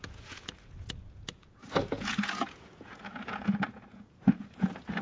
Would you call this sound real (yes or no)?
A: no